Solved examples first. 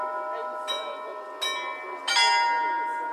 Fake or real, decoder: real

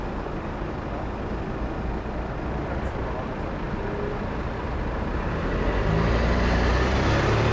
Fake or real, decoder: real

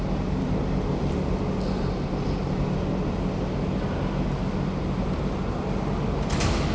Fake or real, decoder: real